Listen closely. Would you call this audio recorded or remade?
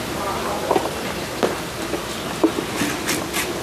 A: recorded